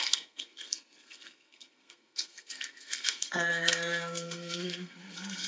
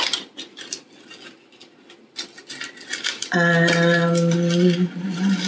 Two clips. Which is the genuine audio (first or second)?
second